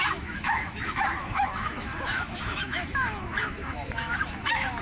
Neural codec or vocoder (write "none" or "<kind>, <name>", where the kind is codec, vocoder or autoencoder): autoencoder, DAC-VAE